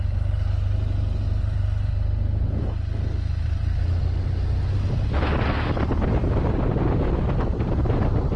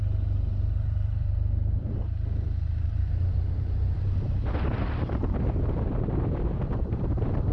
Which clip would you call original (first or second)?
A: first